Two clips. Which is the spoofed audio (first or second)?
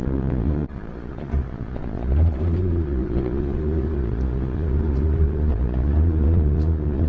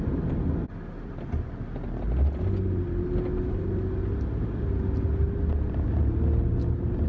first